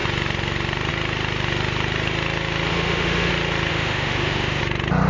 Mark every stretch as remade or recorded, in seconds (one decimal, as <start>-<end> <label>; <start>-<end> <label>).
0.0-2.7 recorded; 2.7-3.3 remade; 3.3-3.7 recorded; 3.7-4.6 remade; 4.6-5.1 recorded